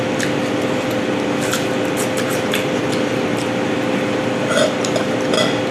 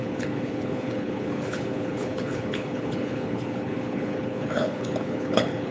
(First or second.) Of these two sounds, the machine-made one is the second